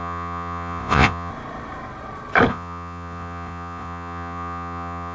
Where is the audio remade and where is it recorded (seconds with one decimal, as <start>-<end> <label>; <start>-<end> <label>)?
0.0-1.3 remade; 1.3-2.5 recorded; 2.5-5.1 remade